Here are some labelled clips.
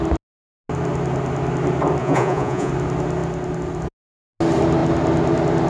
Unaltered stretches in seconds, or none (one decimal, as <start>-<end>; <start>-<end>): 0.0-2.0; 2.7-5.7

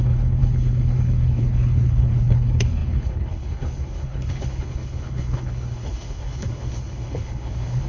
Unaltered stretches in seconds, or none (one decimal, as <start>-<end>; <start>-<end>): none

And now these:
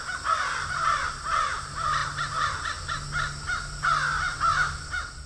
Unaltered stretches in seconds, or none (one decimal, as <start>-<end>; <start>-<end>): 2.0-5.3